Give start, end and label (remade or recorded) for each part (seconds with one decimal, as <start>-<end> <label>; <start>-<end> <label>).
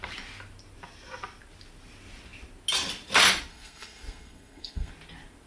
0.0-3.5 recorded; 3.5-4.9 remade; 4.9-5.5 recorded